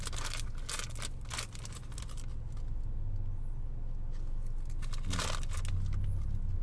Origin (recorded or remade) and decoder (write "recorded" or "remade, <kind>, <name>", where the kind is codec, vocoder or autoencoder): recorded